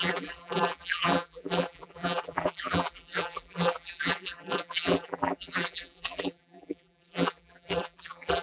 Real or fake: fake